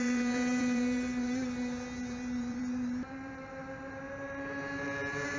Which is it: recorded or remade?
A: remade